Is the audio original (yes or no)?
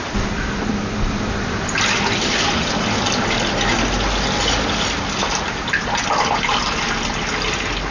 yes